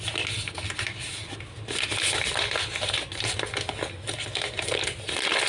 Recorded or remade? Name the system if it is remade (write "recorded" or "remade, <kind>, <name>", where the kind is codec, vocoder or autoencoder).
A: recorded